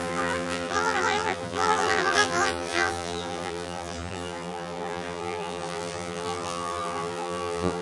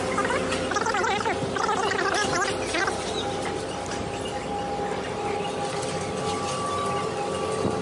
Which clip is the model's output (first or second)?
first